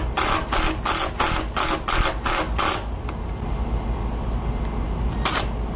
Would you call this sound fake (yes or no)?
no